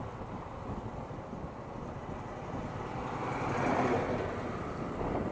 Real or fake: real